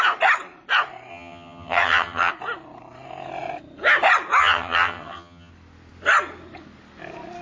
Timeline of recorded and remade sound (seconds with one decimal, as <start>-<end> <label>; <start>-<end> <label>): 0.0-1.1 recorded; 1.1-2.3 remade; 2.3-4.4 recorded; 4.4-5.5 remade; 5.5-7.4 recorded